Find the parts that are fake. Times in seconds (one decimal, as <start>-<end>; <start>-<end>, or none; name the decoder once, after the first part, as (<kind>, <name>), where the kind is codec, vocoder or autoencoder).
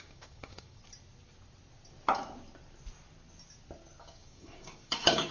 0.0-0.8 (codec, DAC); 4.0-5.3